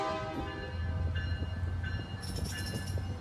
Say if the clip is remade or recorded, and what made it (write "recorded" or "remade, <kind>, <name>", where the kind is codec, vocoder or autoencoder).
recorded